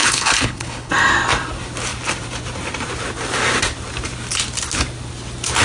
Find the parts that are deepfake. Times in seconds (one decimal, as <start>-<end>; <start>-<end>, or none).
0.0-0.9